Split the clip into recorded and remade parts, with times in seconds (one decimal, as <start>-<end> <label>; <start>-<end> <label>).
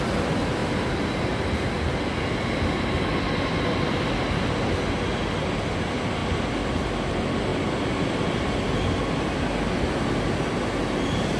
0.0-11.4 recorded